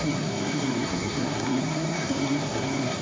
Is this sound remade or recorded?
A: remade